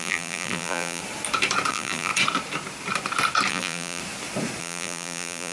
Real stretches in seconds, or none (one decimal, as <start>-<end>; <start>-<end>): 1.0-1.7; 2.1-3.5; 4.0-4.6